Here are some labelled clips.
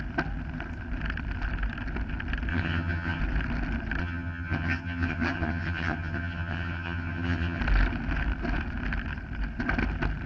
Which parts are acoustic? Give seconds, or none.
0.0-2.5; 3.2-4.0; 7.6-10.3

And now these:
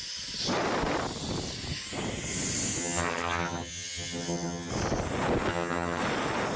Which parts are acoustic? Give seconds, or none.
0.0-2.8; 4.7-5.5; 6.0-6.6